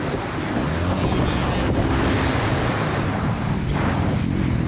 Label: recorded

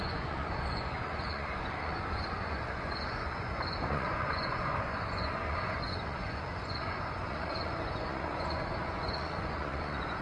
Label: remade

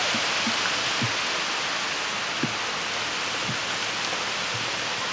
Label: recorded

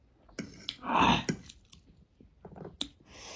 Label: recorded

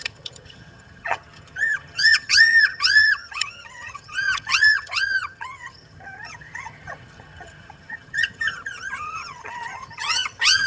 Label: remade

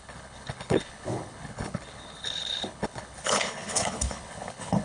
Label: remade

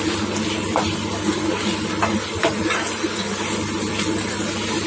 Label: recorded